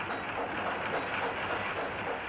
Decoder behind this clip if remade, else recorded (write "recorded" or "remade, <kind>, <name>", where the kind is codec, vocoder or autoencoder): recorded